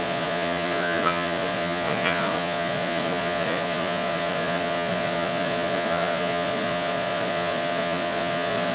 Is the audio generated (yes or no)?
yes